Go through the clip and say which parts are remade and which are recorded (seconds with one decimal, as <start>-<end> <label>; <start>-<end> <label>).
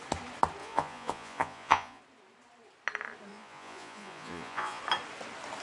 0.0-0.6 recorded; 0.6-2.0 remade; 2.0-3.3 recorded; 3.3-4.8 remade; 4.8-5.6 recorded